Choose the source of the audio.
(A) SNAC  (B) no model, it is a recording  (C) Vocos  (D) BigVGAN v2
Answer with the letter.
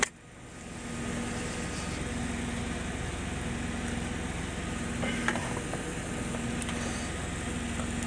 B